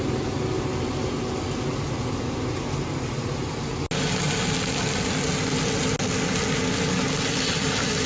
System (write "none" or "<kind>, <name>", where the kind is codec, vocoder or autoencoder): none